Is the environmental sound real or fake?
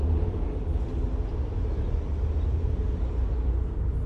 real